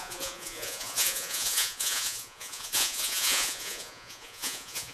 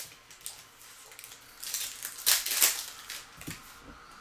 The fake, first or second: first